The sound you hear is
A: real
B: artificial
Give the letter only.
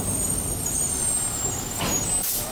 B